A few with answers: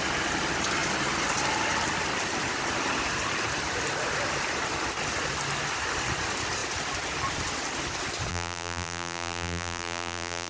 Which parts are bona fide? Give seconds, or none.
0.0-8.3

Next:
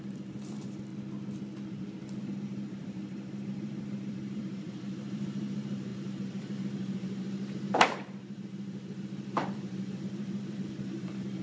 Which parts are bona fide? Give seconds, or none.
0.9-2.2

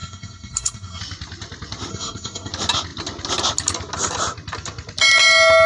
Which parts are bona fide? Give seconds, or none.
1.0-1.9; 2.5-5.7

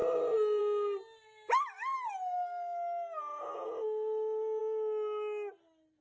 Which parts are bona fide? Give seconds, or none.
0.0-6.0

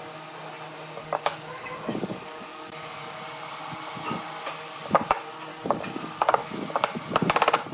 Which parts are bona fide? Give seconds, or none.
0.0-1.0; 3.2-5.5; 6.5-7.7